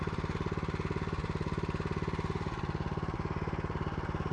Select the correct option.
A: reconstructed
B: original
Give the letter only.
A